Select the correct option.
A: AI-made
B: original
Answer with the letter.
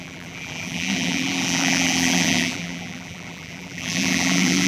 A